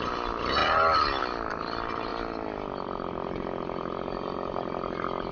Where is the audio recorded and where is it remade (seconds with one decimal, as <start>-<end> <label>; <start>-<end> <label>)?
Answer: 0.0-5.3 recorded